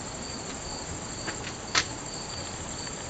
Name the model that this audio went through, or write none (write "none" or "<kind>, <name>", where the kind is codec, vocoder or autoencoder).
none